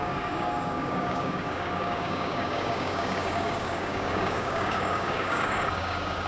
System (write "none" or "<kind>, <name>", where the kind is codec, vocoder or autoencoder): codec, DAC